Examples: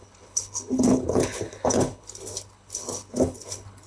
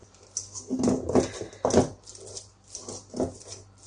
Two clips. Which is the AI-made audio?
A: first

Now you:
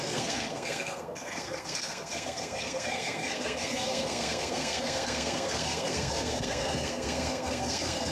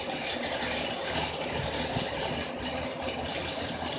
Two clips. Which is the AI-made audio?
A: first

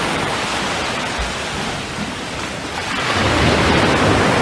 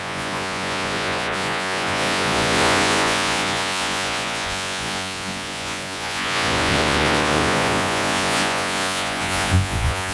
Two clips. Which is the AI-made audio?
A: second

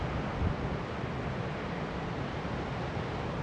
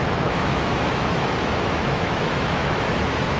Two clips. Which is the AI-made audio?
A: second